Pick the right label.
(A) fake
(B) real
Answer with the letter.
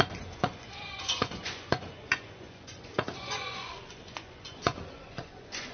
A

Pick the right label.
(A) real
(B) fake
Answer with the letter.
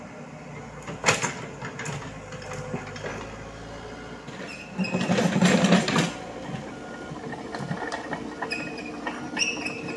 A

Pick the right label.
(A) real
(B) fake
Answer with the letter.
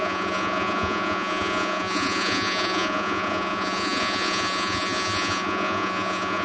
B